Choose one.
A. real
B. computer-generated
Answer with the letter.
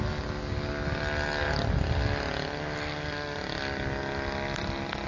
A